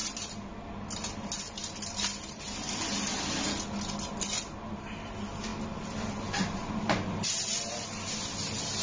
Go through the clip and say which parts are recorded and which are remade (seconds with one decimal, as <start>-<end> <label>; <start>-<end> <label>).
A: 0.0-8.8 recorded